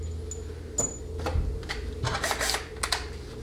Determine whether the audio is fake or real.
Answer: real